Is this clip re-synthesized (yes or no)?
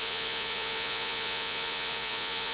yes